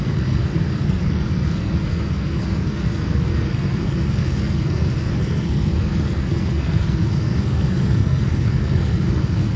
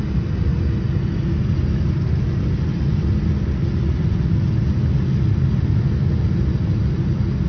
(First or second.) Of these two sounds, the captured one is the second